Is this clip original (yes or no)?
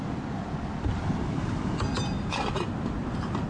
yes